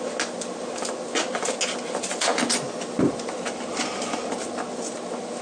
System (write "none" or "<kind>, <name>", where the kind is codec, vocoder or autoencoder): none